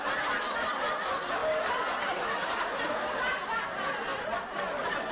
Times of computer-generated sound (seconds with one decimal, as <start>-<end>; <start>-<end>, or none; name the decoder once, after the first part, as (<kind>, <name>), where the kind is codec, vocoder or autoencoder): none

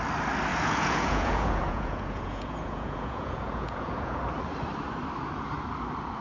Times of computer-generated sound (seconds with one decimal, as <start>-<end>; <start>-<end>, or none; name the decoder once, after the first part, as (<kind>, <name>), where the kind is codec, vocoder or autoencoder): 0.5-4.2 (vocoder, Vocos)